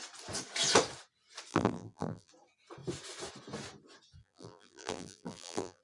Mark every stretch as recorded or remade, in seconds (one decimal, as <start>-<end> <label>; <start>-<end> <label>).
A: 0.0-1.5 recorded; 1.5-2.3 remade; 2.3-4.2 recorded; 4.2-5.8 remade